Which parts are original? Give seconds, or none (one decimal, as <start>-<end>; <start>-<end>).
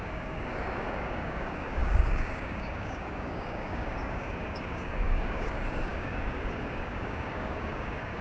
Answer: none